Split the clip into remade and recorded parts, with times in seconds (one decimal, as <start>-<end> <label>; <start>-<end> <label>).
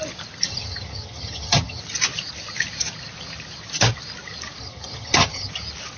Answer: 0.0-0.5 recorded; 0.5-1.8 remade; 1.8-4.6 recorded; 4.6-5.5 remade; 5.5-6.0 recorded